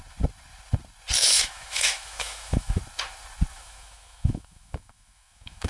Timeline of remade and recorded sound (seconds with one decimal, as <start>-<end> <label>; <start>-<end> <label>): 0.0-1.2 recorded; 1.2-2.8 remade; 2.8-3.5 recorded; 3.5-5.7 remade